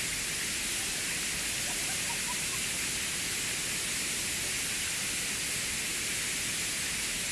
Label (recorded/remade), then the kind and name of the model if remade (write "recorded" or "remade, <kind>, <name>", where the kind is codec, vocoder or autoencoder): recorded